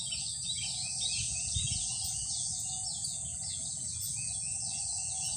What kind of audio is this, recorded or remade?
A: remade